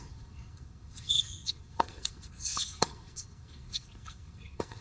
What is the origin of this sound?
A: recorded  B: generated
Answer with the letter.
B